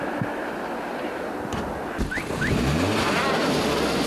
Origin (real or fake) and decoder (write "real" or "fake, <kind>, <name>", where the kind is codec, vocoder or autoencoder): real